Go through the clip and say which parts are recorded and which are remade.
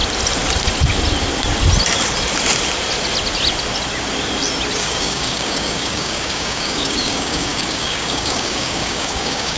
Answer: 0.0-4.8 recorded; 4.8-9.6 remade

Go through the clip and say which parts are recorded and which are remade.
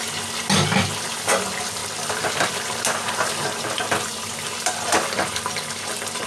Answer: 0.0-6.3 recorded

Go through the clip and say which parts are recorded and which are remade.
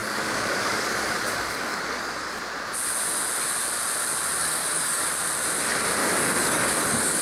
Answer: 0.0-2.4 remade; 2.4-4.4 recorded; 4.4-5.0 remade; 5.0-6.0 recorded; 6.0-7.2 remade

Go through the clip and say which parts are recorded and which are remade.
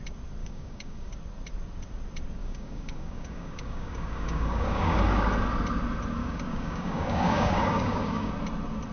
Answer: 0.0-0.4 recorded; 0.4-1.1 remade; 1.1-2.4 recorded; 2.4-5.0 remade; 5.0-6.2 recorded; 6.2-8.3 remade; 8.3-8.9 recorded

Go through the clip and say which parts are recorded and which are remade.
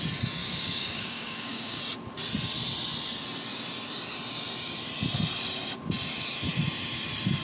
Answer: 0.0-0.4 recorded; 0.4-1.8 remade; 1.8-7.4 recorded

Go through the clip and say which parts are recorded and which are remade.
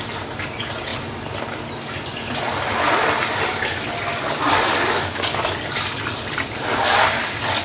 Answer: 0.0-4.1 recorded; 4.1-5.5 remade; 5.5-7.6 recorded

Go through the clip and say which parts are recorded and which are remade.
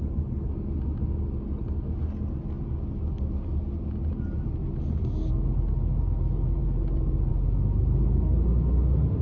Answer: 0.0-9.2 recorded